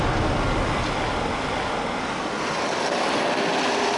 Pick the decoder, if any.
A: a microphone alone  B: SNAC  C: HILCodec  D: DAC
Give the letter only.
A